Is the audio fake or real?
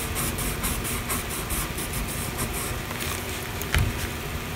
fake